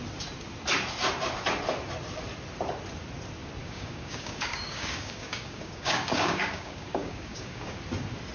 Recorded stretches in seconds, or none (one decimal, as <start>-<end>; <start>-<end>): 0.0-3.6; 7.7-8.3